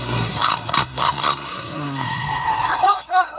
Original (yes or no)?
no